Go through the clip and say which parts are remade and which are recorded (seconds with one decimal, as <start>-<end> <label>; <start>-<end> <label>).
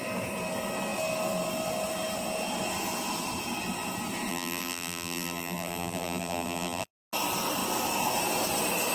0.0-4.3 recorded; 4.3-6.9 remade; 6.9-8.9 recorded